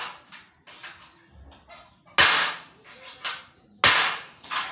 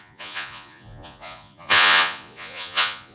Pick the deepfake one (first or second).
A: second